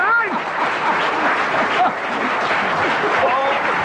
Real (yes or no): yes